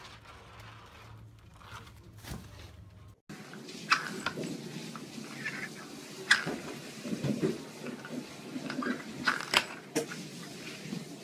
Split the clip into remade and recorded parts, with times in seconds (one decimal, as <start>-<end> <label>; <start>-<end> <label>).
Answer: 0.0-11.2 recorded